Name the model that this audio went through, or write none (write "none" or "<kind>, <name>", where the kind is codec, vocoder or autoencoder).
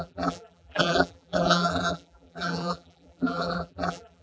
vocoder, BigVGAN v2